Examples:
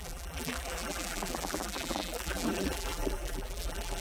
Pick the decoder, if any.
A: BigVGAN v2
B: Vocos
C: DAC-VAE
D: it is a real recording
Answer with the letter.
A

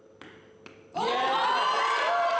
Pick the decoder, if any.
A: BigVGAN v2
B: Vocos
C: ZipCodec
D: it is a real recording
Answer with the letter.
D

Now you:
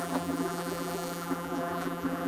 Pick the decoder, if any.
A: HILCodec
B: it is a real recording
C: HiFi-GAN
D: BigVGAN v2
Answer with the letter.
D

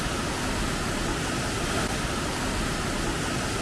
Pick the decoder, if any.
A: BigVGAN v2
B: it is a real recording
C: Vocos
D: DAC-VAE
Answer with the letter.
B